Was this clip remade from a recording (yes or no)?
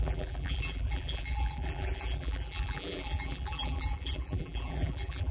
yes